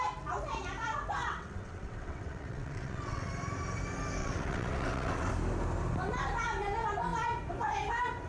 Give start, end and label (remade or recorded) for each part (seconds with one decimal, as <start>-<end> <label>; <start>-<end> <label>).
0.0-1.2 recorded; 1.2-3.3 remade; 3.3-4.2 recorded; 4.2-5.3 remade; 5.3-8.3 recorded